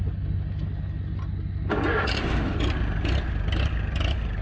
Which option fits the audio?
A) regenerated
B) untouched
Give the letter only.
B